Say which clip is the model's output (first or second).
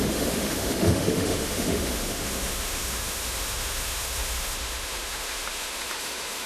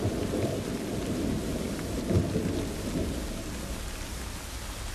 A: first